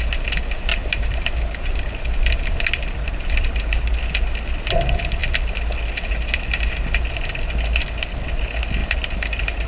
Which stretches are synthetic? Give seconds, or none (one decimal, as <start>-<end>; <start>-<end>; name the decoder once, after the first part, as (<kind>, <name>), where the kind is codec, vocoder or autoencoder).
0.7-3.9 (vocoder, BigVGAN v2); 8.8-9.7